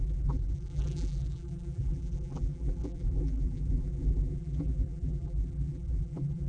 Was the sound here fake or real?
fake